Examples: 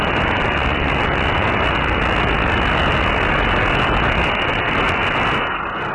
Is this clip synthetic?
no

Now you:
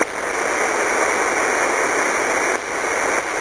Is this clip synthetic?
no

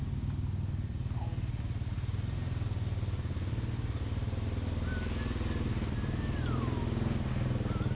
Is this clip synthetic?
no